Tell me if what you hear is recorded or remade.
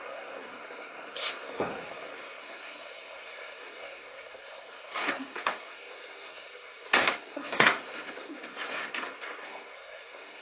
remade